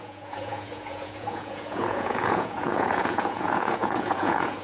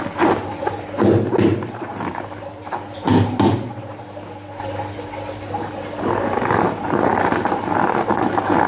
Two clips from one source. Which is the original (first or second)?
second